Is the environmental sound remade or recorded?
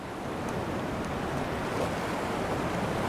recorded